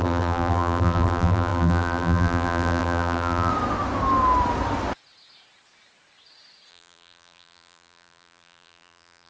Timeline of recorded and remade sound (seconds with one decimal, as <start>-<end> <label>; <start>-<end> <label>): 0.0-3.5 remade; 3.5-6.7 recorded; 6.7-9.3 remade